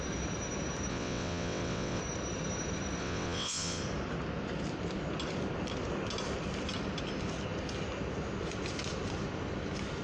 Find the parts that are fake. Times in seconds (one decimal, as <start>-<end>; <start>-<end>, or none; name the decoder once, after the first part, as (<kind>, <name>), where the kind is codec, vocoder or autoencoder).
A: 0.9-2.0 (vocoder, WaveNeXt); 3.0-3.8